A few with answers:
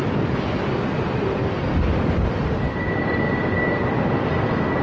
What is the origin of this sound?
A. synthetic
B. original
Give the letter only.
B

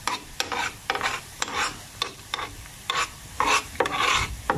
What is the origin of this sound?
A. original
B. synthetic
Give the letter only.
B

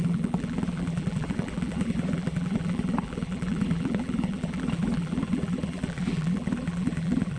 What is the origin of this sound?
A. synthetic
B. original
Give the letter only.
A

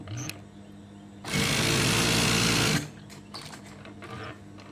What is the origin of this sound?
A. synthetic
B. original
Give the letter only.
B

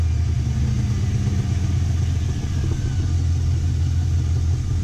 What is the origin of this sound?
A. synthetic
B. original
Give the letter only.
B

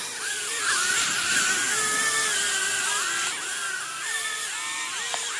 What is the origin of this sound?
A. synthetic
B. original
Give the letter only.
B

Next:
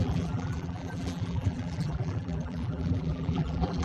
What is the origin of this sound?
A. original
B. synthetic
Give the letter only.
B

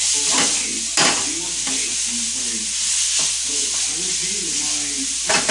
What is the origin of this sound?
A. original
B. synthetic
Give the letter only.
A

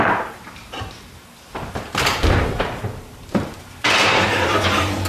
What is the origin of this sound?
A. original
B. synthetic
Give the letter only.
B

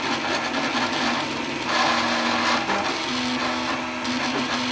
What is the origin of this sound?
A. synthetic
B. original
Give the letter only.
B